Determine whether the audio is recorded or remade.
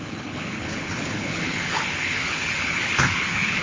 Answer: remade